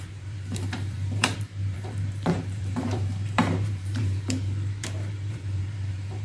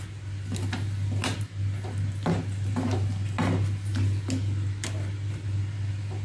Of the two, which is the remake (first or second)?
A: first